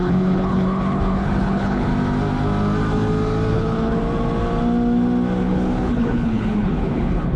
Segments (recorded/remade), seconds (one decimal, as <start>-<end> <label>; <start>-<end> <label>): 0.0-1.9 remade; 1.9-3.5 recorded; 3.5-4.0 remade; 4.0-5.4 recorded; 5.4-7.4 remade